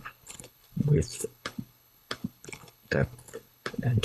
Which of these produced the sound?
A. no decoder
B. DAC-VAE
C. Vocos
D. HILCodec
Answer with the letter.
D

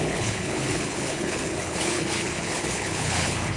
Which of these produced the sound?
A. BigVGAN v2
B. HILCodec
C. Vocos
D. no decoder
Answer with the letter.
B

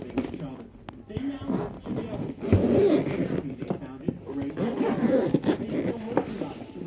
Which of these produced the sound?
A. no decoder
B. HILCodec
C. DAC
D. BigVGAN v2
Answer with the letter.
A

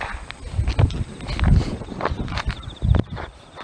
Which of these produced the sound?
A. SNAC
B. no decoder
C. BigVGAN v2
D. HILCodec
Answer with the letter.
B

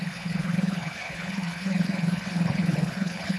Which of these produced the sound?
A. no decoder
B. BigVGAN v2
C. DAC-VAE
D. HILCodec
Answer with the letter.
D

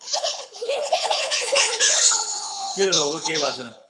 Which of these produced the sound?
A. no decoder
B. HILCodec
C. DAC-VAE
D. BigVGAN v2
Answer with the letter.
B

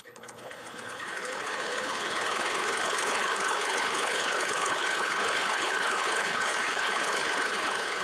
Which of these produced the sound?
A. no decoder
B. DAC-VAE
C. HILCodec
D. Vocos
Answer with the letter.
C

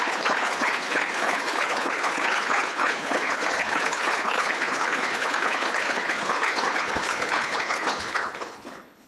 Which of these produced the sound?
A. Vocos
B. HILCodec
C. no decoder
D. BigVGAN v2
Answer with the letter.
B